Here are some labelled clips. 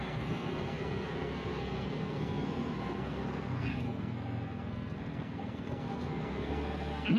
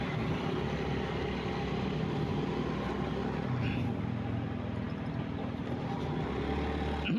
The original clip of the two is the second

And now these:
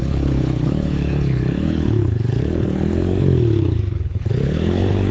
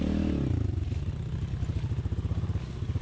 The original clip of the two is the second